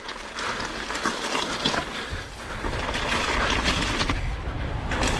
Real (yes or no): yes